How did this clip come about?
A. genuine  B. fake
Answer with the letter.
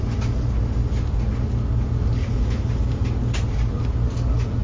A